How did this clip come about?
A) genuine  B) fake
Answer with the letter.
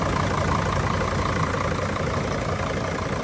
A